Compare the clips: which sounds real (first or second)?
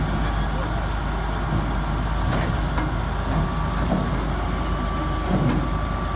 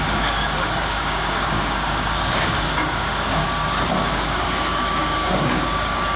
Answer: first